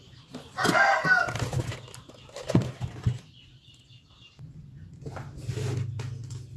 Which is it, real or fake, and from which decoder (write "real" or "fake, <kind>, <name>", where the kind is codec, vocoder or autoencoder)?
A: real